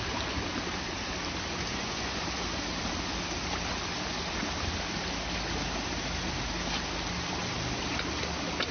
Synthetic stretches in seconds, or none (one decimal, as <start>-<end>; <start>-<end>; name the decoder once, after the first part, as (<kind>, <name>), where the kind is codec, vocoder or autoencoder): 1.7-2.2 (vocoder, Vocos)